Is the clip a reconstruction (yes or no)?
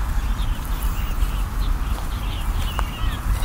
no